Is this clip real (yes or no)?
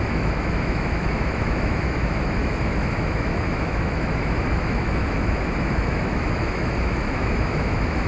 no